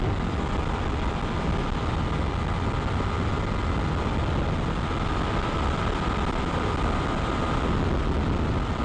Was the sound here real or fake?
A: real